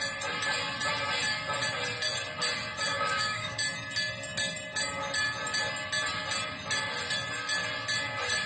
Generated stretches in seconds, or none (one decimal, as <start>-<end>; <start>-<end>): 2.9-3.6